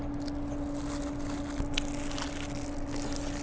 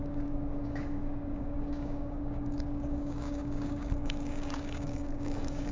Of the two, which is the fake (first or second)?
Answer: second